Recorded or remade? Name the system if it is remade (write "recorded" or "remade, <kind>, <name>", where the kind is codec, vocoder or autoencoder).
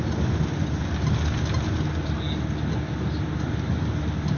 recorded